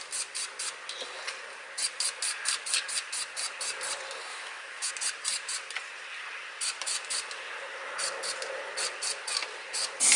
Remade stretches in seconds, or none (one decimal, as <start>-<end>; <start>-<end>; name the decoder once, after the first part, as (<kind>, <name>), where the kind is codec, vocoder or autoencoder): 4.3-4.9 (autoencoder, DAC-VAE)